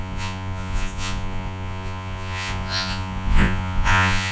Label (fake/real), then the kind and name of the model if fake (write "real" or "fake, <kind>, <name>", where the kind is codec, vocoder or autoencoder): fake, vocoder, Vocos